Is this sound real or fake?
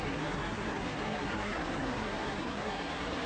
fake